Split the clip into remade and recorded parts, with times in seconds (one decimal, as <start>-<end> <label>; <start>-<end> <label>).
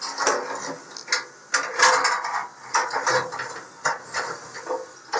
0.0-5.2 recorded